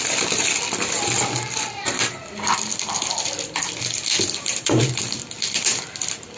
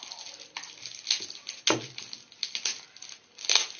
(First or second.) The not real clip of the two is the first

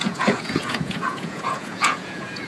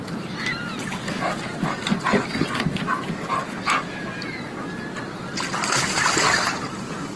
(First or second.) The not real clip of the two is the first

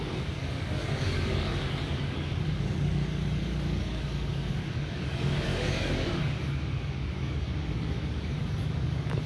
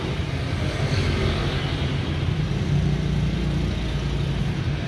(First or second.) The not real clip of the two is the first